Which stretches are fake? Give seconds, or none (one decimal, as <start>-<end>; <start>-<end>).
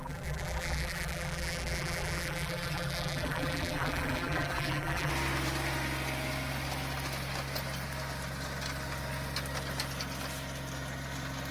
0.0-5.1